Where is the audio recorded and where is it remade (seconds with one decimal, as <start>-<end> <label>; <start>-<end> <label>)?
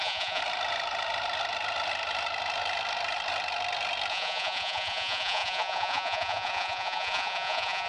0.0-0.4 remade; 0.4-4.1 recorded; 4.1-7.9 remade